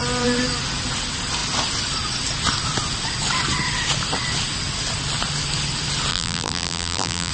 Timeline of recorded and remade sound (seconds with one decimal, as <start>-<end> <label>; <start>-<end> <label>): 0.0-6.1 recorded; 6.1-7.3 remade